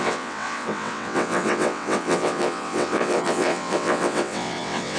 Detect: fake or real fake